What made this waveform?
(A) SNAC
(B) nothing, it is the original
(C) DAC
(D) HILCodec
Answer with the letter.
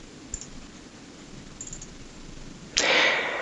B